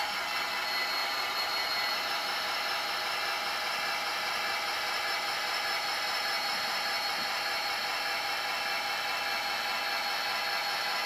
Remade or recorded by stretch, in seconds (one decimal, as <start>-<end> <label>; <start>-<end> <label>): 0.0-1.0 recorded; 1.0-2.9 remade; 2.9-4.1 recorded; 4.1-7.8 remade; 7.8-11.1 recorded